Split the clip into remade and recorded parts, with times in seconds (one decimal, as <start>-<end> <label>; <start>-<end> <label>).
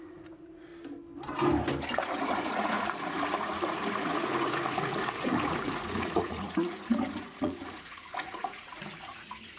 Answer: 0.0-0.7 remade; 0.7-2.0 recorded; 2.0-9.6 remade